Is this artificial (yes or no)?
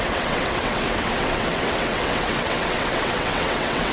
yes